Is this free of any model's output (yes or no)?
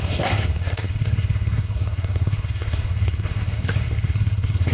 no